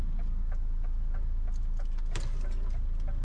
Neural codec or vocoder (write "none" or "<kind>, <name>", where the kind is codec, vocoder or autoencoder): none